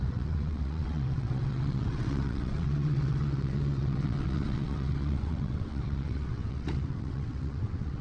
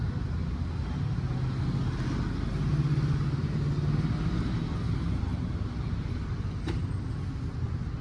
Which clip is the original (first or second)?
second